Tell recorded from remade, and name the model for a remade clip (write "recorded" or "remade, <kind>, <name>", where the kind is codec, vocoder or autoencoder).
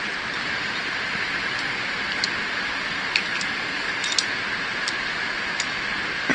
recorded